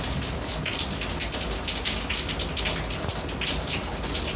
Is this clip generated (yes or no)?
no